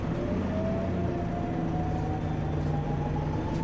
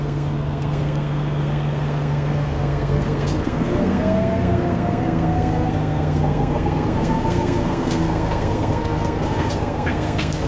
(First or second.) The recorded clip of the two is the first